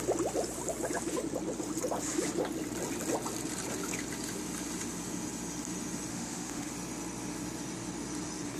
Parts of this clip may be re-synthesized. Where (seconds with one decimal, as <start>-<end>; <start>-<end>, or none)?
6.1-6.7